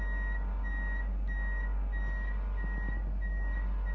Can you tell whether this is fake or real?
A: real